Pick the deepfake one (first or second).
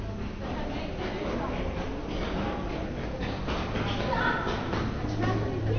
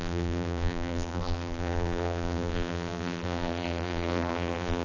second